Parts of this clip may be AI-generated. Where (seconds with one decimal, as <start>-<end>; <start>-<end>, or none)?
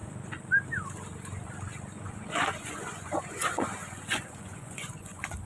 1.9-5.5